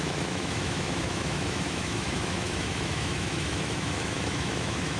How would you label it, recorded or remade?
remade